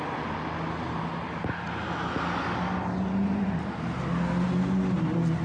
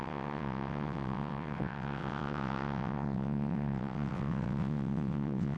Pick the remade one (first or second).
second